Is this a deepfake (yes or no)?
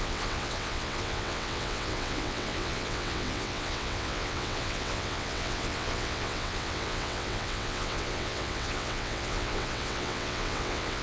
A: yes